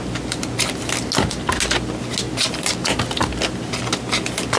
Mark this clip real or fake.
real